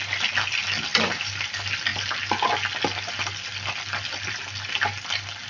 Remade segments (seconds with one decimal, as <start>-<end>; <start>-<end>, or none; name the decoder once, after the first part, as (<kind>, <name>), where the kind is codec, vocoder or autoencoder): none